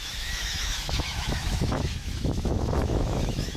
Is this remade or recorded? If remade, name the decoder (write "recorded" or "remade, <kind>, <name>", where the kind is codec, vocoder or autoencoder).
remade, autoencoder, DAC-VAE